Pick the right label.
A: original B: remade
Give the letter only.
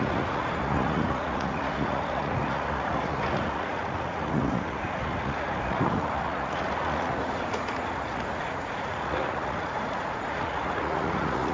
B